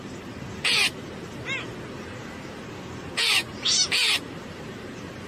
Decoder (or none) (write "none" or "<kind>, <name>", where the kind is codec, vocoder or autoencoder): vocoder, BigVGAN v2